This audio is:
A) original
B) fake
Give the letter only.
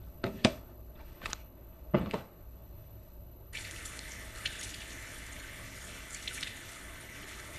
B